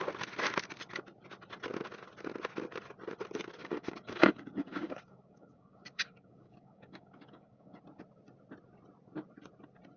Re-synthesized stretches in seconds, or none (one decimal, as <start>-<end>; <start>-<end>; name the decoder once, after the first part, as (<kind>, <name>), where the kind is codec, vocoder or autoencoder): 3.6-7.8 (codec, DAC)